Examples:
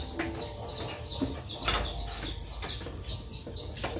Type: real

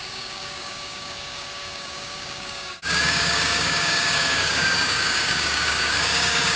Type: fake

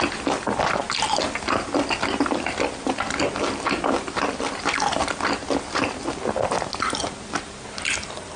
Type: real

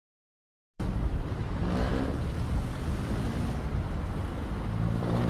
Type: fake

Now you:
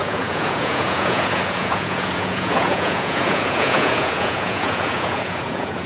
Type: fake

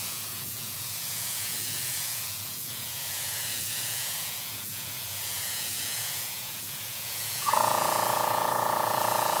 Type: fake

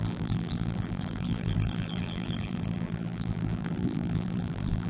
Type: fake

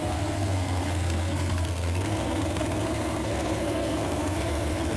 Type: fake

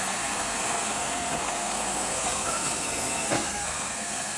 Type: fake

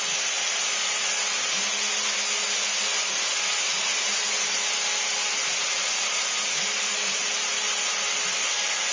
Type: real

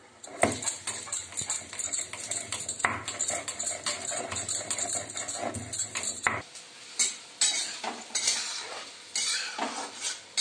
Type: real